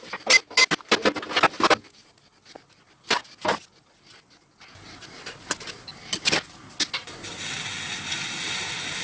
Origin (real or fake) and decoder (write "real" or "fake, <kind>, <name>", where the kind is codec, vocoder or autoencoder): real